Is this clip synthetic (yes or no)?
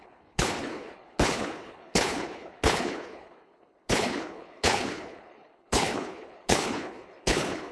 yes